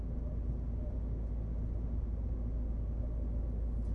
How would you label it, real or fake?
real